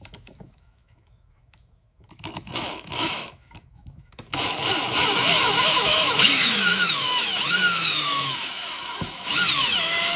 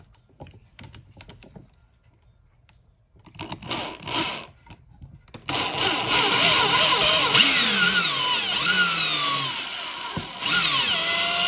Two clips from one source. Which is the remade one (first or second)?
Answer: first